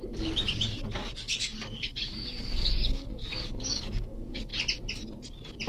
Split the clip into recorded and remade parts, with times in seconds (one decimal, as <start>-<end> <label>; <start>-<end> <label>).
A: 0.0-4.5 remade; 4.5-5.7 recorded